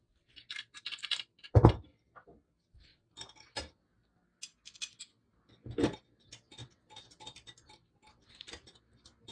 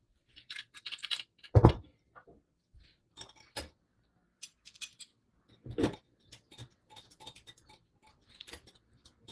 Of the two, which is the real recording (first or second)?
first